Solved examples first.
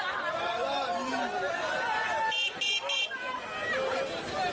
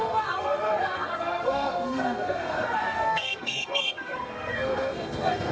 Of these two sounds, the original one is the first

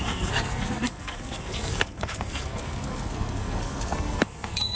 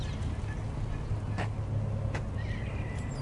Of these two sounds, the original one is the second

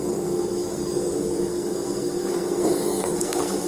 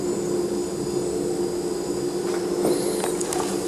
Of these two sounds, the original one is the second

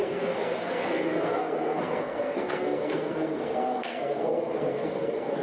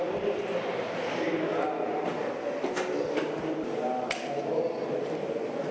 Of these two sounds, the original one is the second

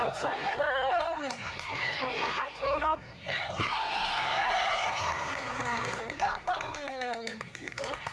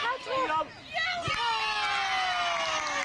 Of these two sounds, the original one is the second